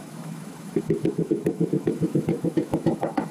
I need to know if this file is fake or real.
fake